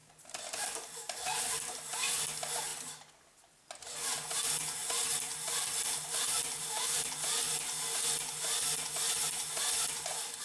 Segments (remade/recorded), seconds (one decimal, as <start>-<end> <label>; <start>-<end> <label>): 0.0-2.2 remade; 2.2-4.8 recorded; 4.8-7.1 remade; 7.1-10.4 recorded